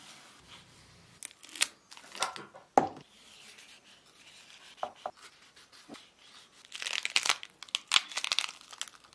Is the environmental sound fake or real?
real